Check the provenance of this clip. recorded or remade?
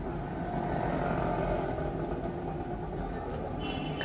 recorded